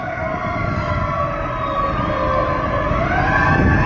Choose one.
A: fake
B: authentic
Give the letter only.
B